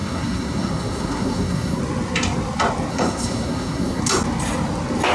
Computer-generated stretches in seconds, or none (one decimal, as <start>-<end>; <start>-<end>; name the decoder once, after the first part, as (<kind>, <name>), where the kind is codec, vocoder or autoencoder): 0.0-1.8 (codec, SNAC); 2.9-4.0